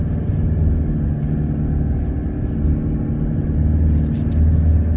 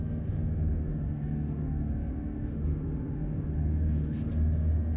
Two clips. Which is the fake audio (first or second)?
second